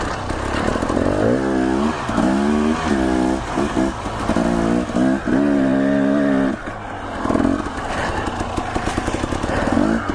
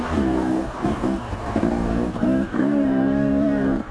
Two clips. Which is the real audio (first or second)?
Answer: first